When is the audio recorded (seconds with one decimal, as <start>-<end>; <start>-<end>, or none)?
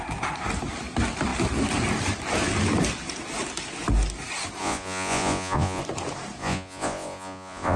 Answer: 0.0-4.6; 5.8-6.4